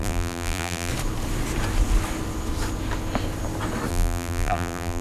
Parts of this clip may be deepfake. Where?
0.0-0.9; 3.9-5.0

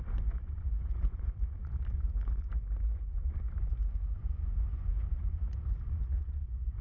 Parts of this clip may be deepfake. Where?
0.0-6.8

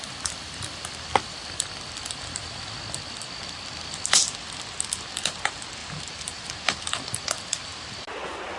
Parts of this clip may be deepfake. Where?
5.8-6.5

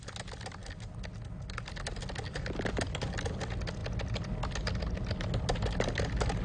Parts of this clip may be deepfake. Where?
none